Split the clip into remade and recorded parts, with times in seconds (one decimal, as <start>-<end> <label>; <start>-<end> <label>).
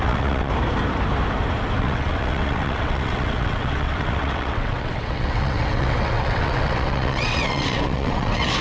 0.0-0.5 remade; 0.5-1.8 recorded; 1.8-8.6 remade